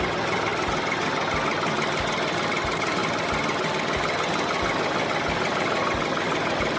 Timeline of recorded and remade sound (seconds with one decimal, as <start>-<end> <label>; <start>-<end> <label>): 0.0-6.8 recorded